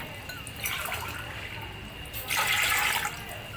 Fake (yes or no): no